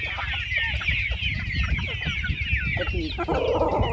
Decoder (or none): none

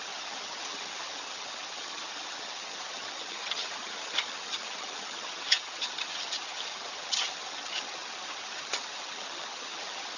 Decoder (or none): vocoder, HiFi-GAN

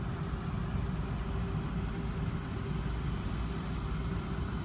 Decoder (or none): none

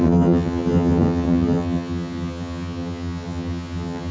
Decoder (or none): vocoder, HiFi-GAN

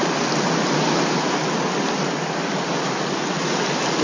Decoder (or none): none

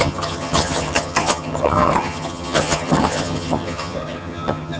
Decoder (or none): vocoder, HiFi-GAN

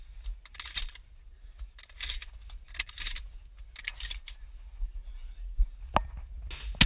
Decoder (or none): none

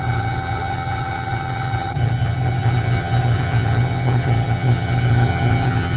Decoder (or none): vocoder, HiFi-GAN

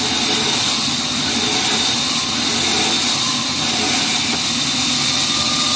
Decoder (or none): none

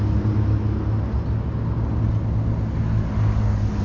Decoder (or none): none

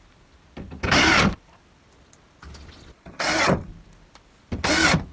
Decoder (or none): none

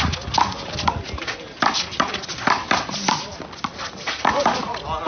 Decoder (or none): none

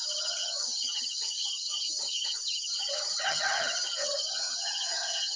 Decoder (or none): vocoder, HiFi-GAN